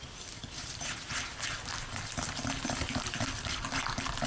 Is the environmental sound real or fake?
real